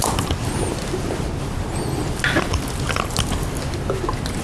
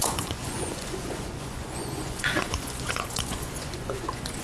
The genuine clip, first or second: first